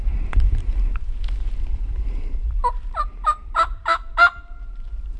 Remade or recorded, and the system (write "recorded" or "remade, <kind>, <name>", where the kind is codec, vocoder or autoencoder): remade, vocoder, BigVGAN v2